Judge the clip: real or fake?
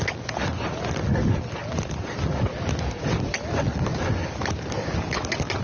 real